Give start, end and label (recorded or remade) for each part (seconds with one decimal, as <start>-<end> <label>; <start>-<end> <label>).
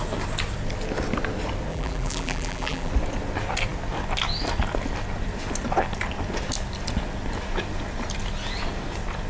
0.0-1.7 recorded; 1.7-2.9 remade; 2.9-9.3 recorded